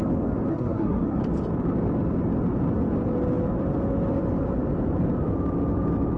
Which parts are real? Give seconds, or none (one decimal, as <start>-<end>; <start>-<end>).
0.0-0.5; 1.2-6.2